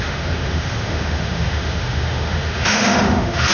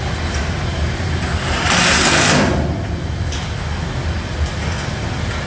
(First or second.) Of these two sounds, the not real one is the first